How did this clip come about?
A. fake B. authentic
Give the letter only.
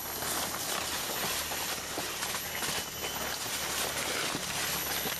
B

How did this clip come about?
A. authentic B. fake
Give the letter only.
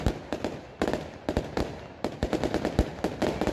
A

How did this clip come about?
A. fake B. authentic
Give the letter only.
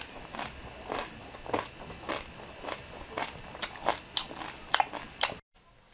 B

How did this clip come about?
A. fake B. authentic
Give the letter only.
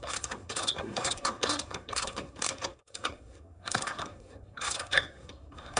A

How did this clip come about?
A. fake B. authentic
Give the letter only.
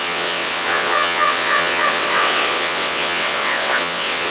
A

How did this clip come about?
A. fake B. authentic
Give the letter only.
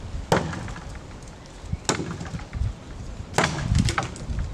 B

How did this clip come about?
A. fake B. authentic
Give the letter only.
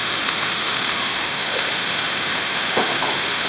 A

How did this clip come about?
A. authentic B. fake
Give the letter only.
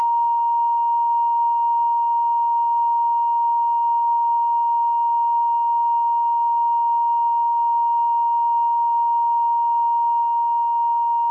B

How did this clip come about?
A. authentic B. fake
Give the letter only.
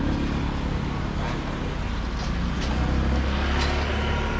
A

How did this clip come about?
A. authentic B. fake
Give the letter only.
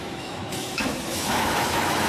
B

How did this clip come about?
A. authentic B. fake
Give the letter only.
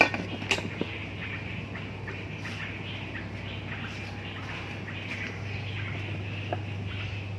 A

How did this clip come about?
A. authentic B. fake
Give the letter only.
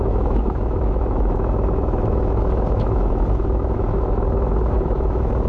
B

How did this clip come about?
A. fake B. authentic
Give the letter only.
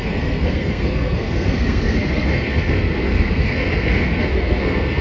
A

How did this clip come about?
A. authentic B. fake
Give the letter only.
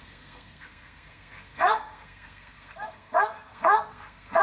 B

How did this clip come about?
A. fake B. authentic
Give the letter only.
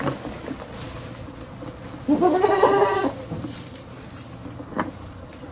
B